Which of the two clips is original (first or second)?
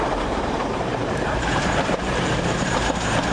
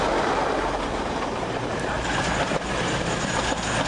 second